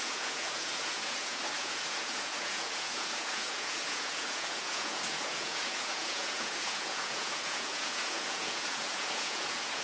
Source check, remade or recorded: remade